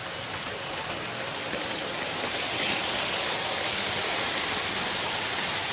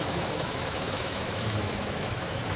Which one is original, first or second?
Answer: first